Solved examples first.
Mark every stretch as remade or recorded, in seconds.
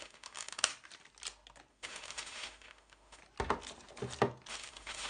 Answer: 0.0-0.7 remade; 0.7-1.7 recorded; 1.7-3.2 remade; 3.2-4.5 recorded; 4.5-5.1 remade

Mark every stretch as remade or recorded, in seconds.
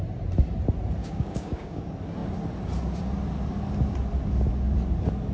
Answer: 0.0-1.0 recorded; 1.0-1.8 remade; 1.8-5.3 recorded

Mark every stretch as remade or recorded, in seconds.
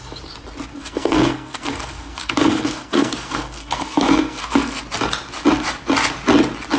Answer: 0.0-0.7 recorded; 0.7-4.8 remade; 4.8-6.8 recorded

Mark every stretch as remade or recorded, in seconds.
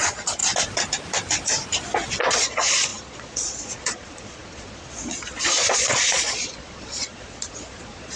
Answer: 0.0-0.4 remade; 0.4-2.2 recorded; 2.2-8.2 remade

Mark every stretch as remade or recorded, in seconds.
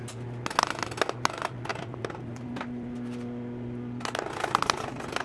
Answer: 0.0-5.2 recorded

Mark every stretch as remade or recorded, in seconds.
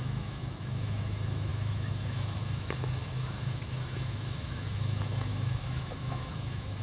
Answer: 0.0-6.8 remade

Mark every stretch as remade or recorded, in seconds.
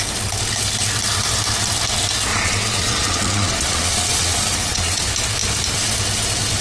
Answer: 0.0-2.3 recorded; 2.3-5.0 remade; 5.0-6.6 recorded